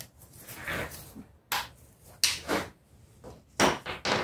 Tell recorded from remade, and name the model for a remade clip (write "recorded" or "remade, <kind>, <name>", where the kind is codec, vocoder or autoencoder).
recorded